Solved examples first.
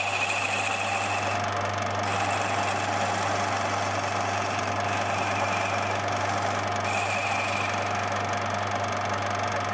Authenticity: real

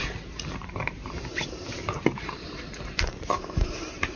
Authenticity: fake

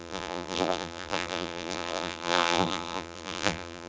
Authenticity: fake